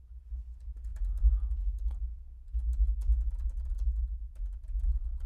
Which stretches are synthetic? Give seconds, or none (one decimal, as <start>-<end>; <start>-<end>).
none